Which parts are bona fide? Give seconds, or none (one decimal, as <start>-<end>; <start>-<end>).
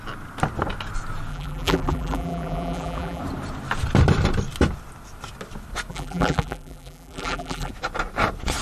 0.0-1.3; 3.2-5.9; 7.7-8.6